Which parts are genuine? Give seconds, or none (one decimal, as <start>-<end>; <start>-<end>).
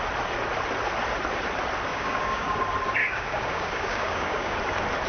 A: 0.0-1.9; 2.6-3.0; 4.6-5.1